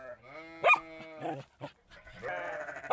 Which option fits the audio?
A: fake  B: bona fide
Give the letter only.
B